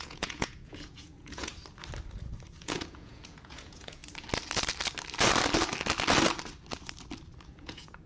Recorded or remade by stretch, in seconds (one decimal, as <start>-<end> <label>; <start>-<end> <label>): 0.0-1.5 remade; 1.5-2.5 recorded; 2.5-4.0 remade; 4.0-7.6 recorded; 7.6-8.1 remade